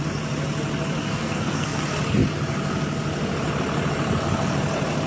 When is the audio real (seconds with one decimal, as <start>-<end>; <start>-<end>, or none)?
0.0-1.0; 1.8-5.1